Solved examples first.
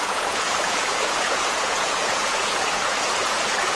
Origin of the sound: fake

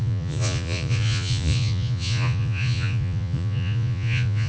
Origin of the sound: fake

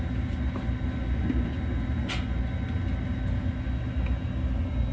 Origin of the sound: real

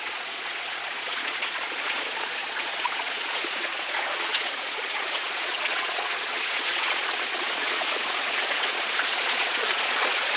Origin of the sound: fake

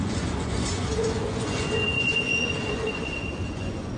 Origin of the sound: fake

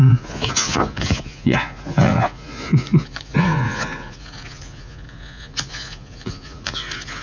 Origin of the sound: fake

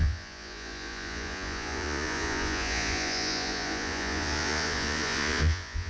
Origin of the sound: fake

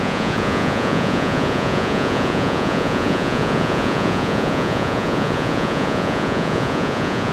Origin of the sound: fake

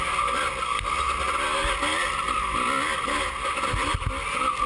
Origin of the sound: real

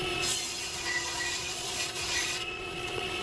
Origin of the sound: fake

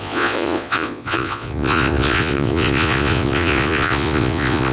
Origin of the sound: fake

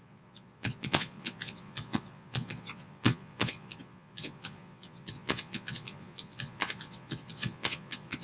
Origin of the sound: fake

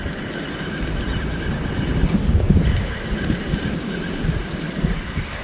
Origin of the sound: real